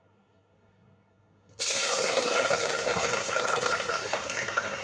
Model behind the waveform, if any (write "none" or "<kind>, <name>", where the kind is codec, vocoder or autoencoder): codec, SNAC